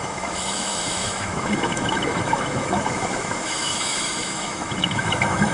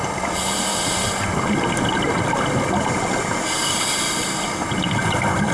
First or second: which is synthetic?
first